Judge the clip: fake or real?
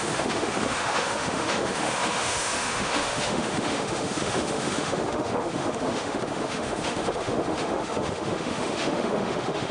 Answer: fake